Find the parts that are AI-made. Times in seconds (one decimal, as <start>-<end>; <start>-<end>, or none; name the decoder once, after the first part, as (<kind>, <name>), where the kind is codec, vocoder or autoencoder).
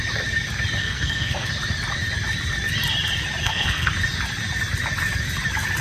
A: 0.8-1.5 (codec, SNAC); 3.4-3.9